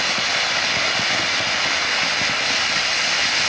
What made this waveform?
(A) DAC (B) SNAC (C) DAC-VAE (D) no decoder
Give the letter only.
D